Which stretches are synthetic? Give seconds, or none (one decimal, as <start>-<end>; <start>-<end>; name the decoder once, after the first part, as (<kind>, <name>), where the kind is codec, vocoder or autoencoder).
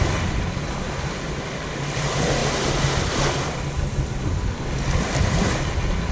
none